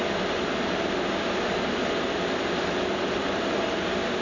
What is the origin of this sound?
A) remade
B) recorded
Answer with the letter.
B